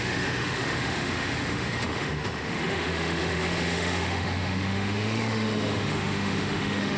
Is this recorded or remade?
remade